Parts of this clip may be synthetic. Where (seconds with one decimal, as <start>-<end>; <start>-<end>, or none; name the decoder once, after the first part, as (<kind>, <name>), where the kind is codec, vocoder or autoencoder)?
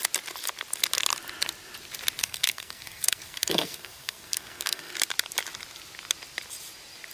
2.2-4.9 (codec, SNAC)